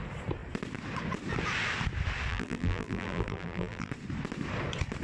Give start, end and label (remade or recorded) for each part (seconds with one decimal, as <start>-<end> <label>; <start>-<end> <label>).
0.0-2.3 recorded; 2.3-3.9 remade; 3.9-5.0 recorded